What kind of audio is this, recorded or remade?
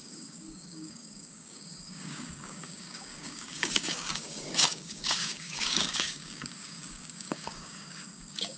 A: remade